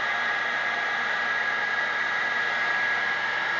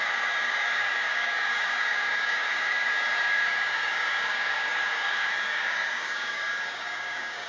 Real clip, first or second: first